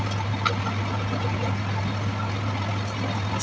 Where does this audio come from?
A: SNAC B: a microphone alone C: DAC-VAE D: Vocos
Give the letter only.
B